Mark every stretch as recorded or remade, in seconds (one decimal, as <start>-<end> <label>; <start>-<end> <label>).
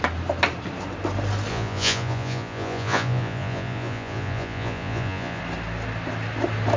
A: 0.0-1.5 recorded; 1.5-5.4 remade; 5.4-6.8 recorded